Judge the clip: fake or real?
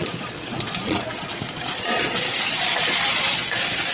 fake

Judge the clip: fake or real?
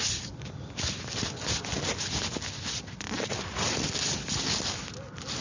real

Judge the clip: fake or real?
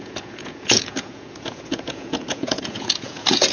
fake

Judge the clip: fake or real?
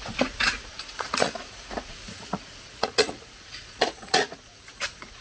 fake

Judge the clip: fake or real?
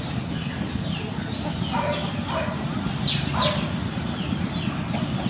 real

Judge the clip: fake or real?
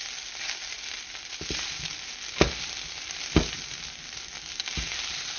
real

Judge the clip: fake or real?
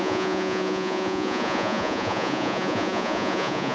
fake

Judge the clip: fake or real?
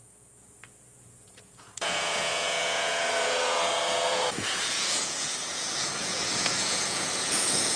fake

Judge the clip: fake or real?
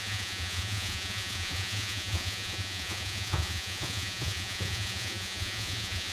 fake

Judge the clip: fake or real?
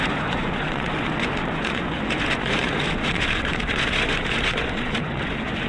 fake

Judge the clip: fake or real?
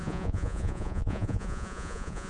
fake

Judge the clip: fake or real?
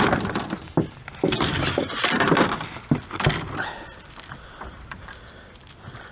real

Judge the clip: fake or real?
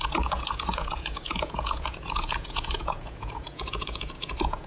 fake